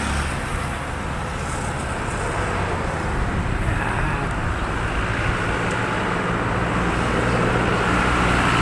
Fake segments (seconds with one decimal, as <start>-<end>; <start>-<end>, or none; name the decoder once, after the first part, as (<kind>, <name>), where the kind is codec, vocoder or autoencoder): none